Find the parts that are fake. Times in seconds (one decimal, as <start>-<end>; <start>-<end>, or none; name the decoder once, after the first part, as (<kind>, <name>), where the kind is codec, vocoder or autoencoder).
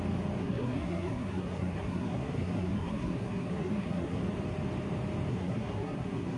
0.4-4.2 (codec, SNAC); 5.3-6.4